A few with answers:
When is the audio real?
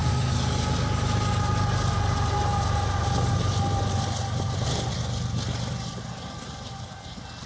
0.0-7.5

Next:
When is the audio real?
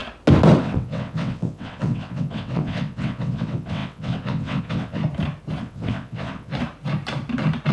0.0-0.6; 5.0-5.6; 6.5-7.7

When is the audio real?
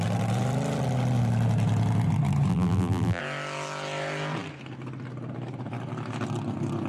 0.0-2.5; 3.2-6.9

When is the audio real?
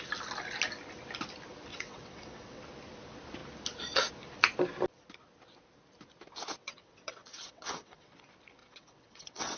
0.0-1.7; 2.6-6.6; 8.1-8.6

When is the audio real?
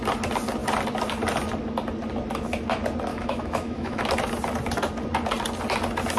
0.0-3.1; 4.0-6.2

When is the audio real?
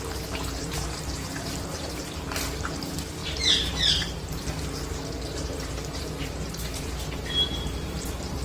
none